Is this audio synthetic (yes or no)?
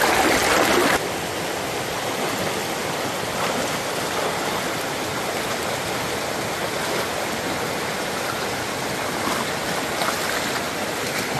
no